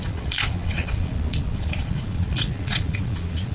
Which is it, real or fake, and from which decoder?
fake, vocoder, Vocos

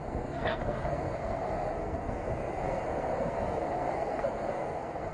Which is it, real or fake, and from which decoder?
fake, codec, SNAC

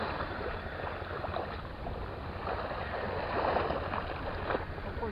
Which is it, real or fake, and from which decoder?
real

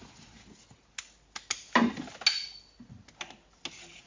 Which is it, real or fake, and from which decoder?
real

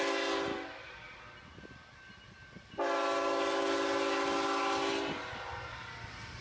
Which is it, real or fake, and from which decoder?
real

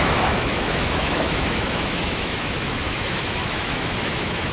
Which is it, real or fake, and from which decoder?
fake, autoencoder, DAC-VAE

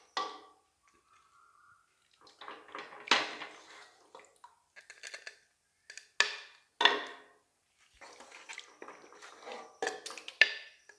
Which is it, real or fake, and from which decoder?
real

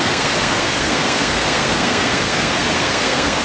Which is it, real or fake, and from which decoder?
fake, codec, SNAC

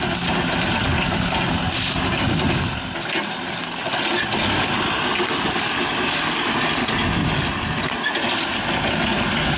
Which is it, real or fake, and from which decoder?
real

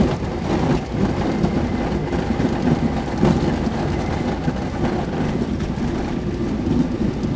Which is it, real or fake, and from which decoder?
real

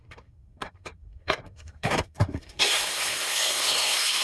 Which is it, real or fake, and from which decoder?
fake, codec, SNAC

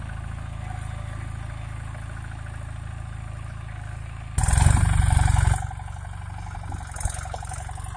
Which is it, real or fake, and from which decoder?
real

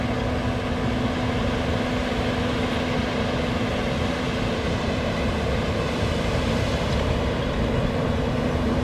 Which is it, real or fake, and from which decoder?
real